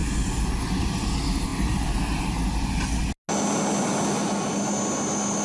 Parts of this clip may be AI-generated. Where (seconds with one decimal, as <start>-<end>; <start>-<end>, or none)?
none